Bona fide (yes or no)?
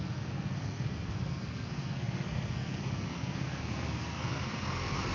no